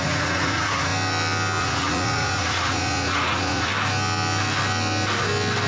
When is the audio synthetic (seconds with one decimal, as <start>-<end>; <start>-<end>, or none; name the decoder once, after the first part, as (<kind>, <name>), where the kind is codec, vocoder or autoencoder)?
0.0-0.9 (vocoder, Vocos); 1.6-3.7